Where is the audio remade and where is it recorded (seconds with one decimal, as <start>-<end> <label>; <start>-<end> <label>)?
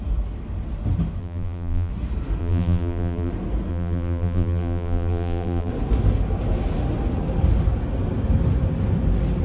0.0-1.2 recorded; 1.2-1.9 remade; 1.9-2.4 recorded; 2.4-3.3 remade; 3.3-3.7 recorded; 3.7-5.7 remade; 5.7-9.4 recorded